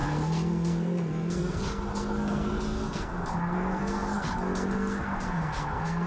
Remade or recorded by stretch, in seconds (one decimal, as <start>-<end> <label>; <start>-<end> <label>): 0.0-6.1 remade